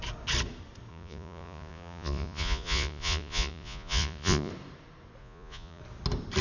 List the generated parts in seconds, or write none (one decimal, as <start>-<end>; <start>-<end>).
0.9-4.5; 5.2-5.8